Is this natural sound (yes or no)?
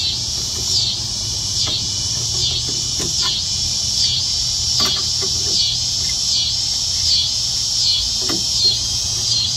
no